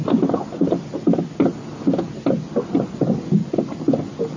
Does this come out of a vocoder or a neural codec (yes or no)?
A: no